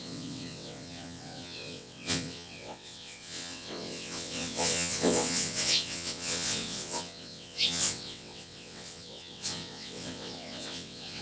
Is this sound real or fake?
fake